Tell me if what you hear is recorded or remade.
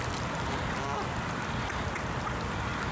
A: recorded